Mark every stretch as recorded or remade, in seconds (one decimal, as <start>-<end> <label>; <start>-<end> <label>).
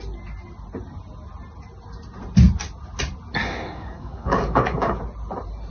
0.0-3.4 recorded; 3.4-5.0 remade; 5.0-5.7 recorded